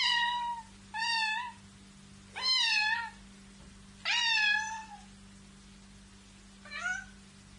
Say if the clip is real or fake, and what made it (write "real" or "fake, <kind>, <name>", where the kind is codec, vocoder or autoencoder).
real